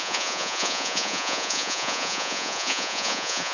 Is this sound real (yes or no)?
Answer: no